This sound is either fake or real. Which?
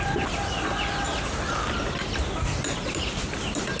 real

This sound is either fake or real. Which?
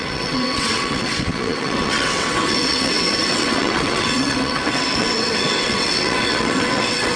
fake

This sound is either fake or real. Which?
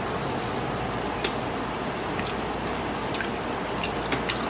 real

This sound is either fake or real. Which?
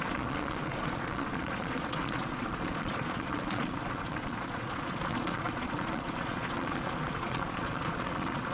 fake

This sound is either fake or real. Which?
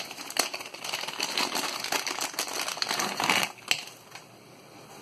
real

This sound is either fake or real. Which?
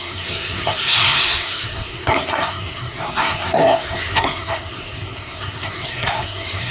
fake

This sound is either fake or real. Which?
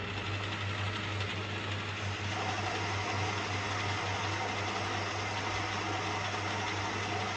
real